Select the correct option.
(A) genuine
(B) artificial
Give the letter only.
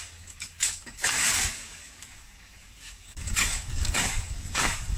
B